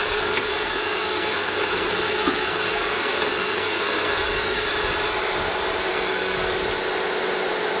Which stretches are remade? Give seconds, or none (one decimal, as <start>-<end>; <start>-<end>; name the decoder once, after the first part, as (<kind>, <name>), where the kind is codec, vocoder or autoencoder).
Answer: 0.0-4.7 (codec, SNAC); 5.9-6.5